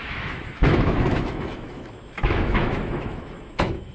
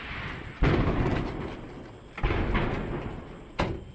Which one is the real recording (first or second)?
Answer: second